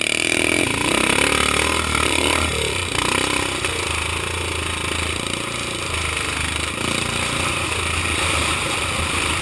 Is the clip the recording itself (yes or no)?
yes